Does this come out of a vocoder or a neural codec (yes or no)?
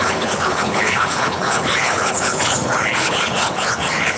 yes